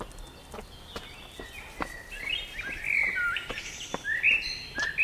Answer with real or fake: real